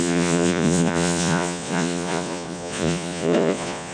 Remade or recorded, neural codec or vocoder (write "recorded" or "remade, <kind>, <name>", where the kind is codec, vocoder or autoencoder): remade, vocoder, Vocos